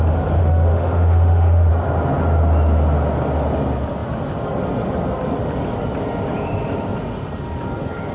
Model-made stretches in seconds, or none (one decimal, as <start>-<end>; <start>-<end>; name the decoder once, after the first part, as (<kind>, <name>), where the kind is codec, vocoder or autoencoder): 0.4-1.7 (autoencoder, DAC-VAE)